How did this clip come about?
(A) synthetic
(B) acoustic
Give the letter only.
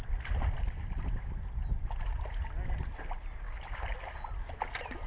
B